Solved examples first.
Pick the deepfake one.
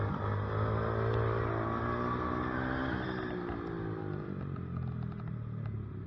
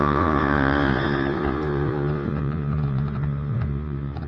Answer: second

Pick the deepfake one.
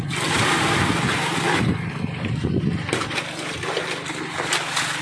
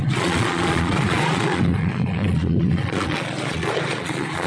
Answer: second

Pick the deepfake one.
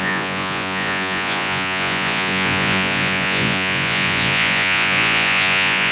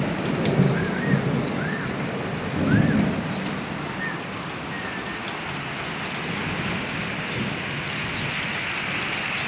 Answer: first